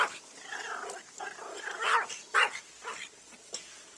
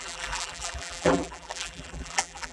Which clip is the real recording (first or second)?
first